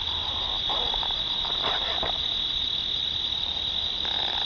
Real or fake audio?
fake